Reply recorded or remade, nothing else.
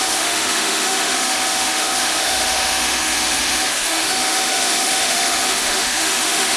remade